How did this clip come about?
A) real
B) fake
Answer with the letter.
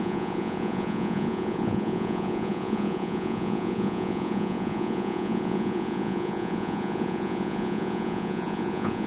B